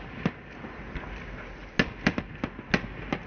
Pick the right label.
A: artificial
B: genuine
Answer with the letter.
B